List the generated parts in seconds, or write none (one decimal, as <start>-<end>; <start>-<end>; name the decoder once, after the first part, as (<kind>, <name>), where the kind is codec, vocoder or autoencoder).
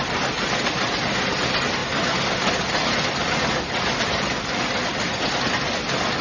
none